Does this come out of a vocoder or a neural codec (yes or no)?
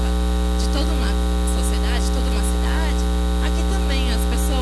no